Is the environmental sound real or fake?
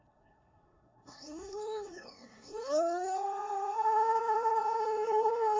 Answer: fake